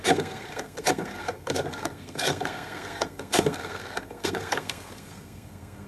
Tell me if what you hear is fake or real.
fake